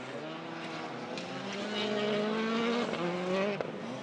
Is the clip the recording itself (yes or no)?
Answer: yes